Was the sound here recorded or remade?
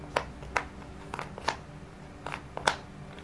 recorded